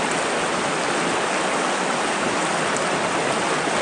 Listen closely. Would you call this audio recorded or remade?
recorded